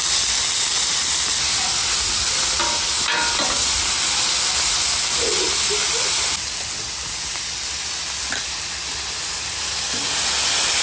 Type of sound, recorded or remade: recorded